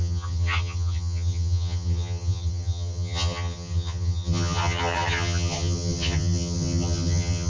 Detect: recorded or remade remade